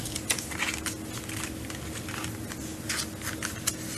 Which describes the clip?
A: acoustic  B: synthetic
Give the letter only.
A